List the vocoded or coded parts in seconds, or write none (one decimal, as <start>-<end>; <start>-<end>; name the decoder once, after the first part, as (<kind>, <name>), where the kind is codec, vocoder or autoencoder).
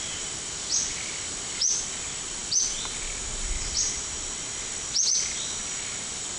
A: none